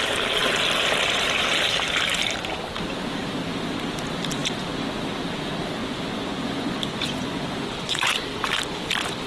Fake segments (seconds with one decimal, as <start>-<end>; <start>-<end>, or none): 5.8-8.2